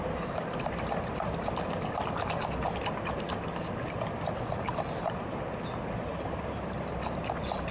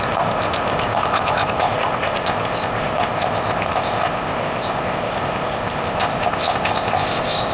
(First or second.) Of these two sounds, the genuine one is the first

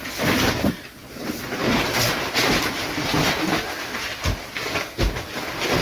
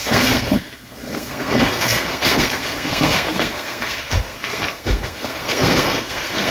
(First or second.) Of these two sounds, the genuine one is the first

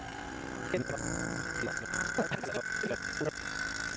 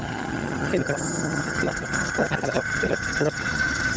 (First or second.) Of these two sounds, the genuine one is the first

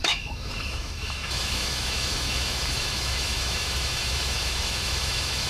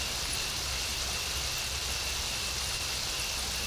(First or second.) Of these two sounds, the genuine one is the second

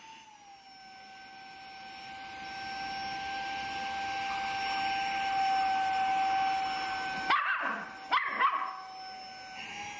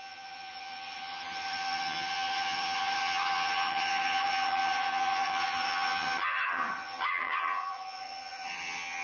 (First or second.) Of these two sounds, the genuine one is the first